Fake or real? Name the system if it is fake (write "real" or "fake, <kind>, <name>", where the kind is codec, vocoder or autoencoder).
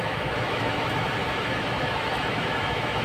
fake, autoencoder, DAC-VAE